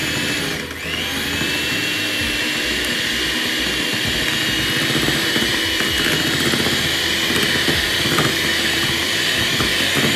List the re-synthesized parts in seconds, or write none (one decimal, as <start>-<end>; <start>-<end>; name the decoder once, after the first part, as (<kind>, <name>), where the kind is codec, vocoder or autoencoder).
9.0-9.7 (vocoder, BigVGAN v2)